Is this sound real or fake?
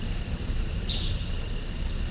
real